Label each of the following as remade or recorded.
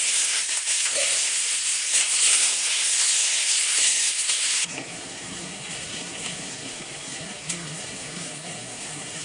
remade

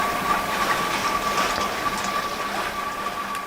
recorded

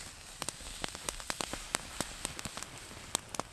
recorded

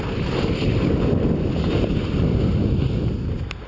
recorded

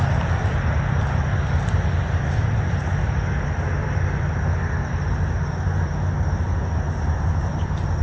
recorded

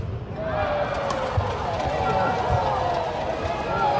recorded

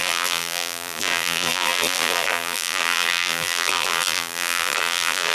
remade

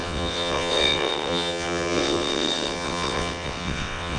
remade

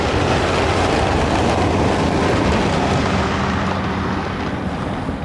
recorded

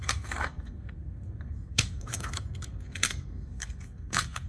remade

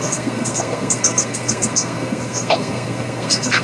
remade